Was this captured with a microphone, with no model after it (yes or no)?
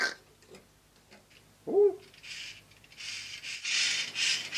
yes